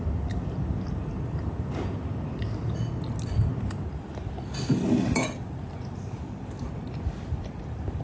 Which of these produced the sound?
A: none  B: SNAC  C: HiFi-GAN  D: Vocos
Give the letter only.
A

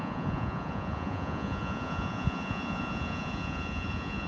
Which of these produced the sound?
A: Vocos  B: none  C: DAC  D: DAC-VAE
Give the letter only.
A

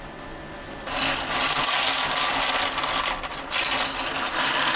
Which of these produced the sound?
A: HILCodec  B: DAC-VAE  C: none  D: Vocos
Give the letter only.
C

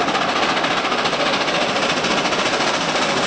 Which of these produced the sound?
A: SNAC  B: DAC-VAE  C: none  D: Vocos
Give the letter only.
C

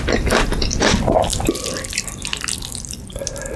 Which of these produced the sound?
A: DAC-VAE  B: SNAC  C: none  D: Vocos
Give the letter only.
C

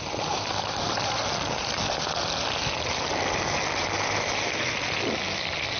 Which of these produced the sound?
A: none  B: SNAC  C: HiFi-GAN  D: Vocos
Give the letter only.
A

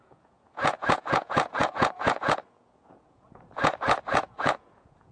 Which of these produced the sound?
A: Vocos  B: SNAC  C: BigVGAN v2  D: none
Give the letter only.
A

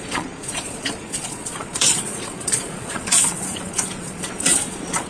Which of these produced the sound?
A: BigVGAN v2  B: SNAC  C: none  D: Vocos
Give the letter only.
D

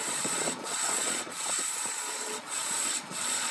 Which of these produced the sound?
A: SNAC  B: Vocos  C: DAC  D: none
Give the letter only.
B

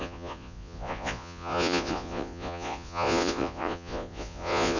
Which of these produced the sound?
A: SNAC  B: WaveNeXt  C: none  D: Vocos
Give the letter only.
D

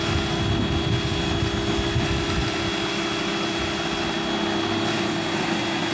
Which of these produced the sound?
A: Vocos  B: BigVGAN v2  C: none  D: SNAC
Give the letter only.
C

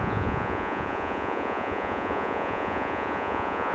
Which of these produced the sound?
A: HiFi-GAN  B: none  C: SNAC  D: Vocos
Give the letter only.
D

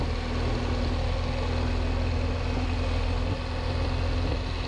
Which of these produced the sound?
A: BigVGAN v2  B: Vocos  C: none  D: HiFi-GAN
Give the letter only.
C